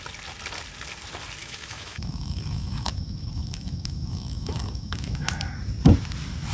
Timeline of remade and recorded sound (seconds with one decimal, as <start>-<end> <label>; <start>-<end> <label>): 0.0-1.4 recorded; 1.4-5.3 remade; 5.3-6.5 recorded